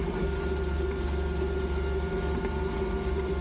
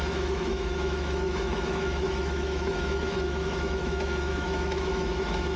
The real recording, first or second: first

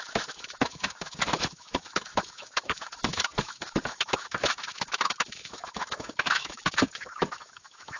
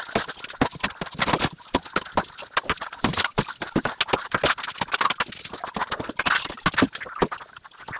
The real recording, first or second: second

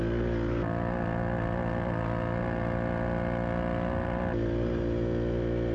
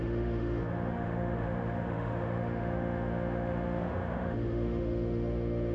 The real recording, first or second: first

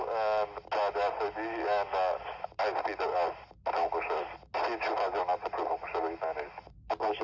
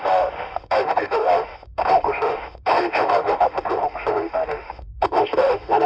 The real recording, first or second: first